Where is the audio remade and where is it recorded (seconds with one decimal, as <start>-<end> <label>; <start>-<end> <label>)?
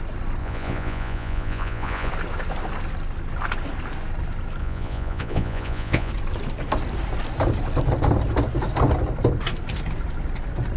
0.0-0.4 recorded; 0.4-2.1 remade; 2.1-4.6 recorded; 4.6-6.1 remade; 6.1-10.8 recorded